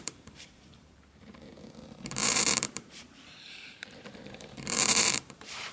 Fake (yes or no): yes